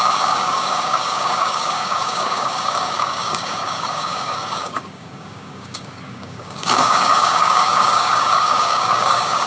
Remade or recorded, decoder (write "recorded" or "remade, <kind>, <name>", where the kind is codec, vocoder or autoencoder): remade, codec, DAC